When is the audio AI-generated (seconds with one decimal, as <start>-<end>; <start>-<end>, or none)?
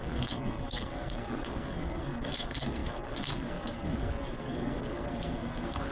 0.0-5.9